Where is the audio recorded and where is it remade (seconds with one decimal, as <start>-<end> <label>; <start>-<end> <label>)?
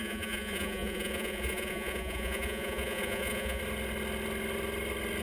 0.0-3.6 remade; 3.6-5.2 recorded